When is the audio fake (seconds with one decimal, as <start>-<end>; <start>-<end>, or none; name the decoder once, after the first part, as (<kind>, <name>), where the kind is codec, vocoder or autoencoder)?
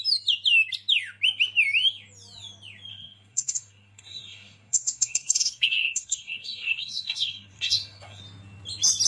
2.9-8.2 (codec, SNAC)